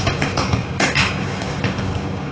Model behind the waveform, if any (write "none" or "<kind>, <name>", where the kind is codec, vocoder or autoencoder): codec, DAC